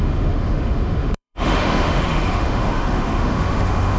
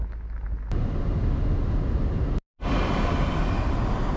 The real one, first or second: second